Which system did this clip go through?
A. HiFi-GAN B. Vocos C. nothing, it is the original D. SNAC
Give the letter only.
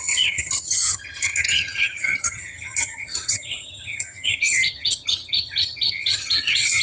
A